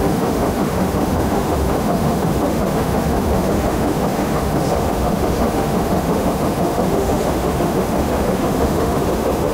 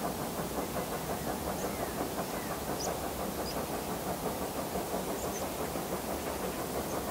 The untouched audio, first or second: second